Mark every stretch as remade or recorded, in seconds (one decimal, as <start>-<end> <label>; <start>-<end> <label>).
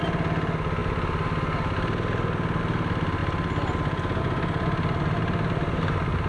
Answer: 0.0-6.3 recorded